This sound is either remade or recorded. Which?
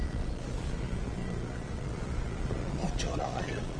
remade